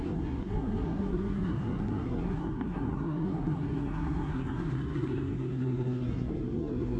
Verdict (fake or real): fake